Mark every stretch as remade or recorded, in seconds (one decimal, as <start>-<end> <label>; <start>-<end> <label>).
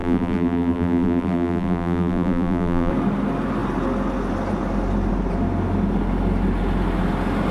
0.0-2.9 remade; 2.9-7.5 recorded